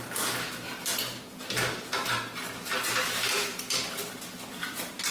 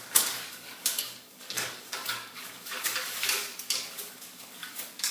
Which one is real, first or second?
first